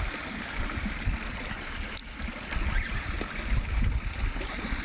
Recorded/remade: recorded